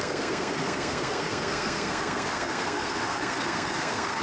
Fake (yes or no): yes